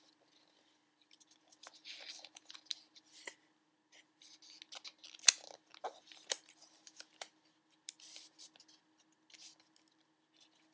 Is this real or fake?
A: real